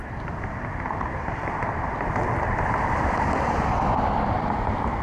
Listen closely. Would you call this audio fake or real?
fake